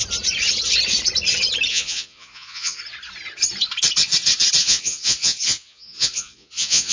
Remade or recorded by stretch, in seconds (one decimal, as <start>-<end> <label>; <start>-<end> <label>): 0.0-1.7 recorded; 1.7-2.8 remade; 2.8-4.6 recorded; 4.6-6.9 remade